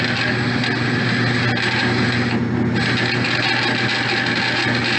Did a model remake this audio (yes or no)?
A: no